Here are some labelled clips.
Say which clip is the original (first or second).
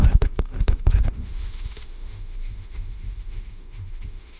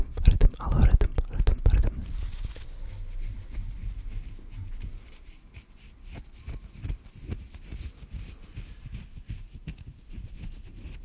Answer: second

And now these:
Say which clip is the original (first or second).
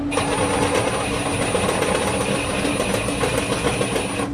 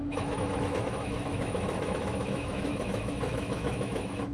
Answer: first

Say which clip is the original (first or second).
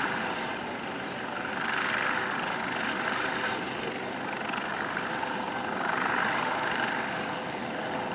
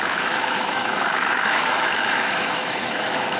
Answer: first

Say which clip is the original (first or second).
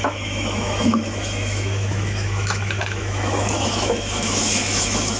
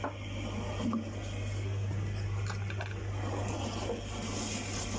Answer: second